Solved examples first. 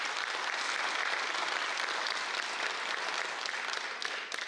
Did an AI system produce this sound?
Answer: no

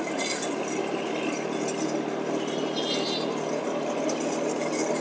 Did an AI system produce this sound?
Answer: no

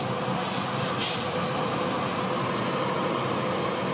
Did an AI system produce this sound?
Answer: no